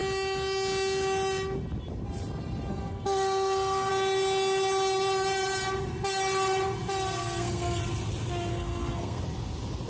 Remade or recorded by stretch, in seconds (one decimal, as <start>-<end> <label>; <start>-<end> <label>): 0.0-2.7 recorded; 2.7-3.9 remade; 3.9-7.2 recorded; 7.2-7.8 remade; 7.8-8.5 recorded; 8.5-9.2 remade; 9.2-9.9 recorded